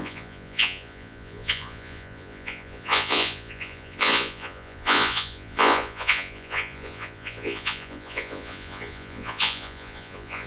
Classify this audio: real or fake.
fake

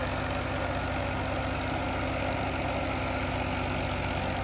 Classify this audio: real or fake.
real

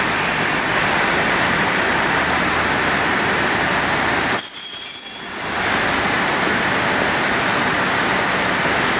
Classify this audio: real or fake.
real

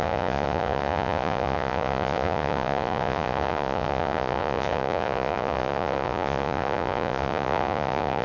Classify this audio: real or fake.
fake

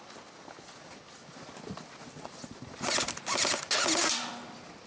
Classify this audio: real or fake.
real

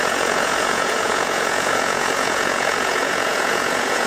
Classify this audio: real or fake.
fake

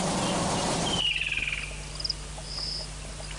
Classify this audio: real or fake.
real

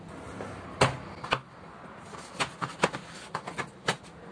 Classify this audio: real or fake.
real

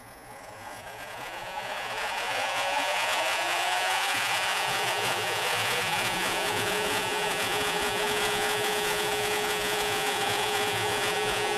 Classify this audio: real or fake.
fake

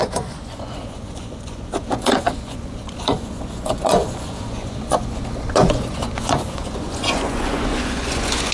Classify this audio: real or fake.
fake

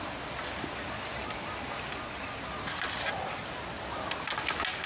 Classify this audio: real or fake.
real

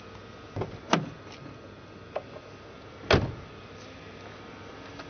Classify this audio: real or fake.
real